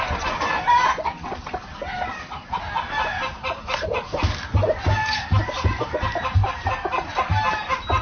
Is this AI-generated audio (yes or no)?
no